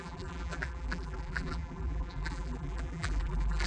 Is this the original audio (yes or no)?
no